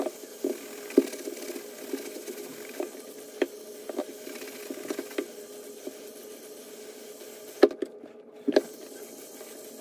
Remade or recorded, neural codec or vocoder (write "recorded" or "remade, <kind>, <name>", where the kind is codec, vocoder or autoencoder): recorded